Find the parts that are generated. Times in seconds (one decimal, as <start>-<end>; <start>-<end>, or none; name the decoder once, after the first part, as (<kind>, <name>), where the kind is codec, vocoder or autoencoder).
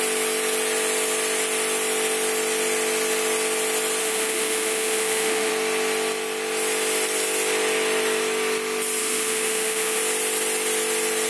4.0-5.5 (autoencoder, DAC-VAE); 9.0-10.0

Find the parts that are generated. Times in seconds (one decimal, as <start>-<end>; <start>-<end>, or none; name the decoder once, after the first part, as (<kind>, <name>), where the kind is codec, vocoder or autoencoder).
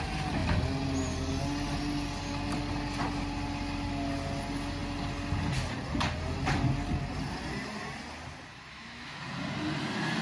8.5-9.2 (autoencoder, DAC-VAE)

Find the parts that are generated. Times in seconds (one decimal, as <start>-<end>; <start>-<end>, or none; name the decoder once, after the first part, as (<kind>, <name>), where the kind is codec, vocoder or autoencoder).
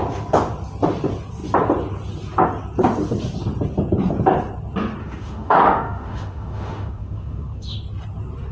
5.0-7.8 (autoencoder, DAC-VAE)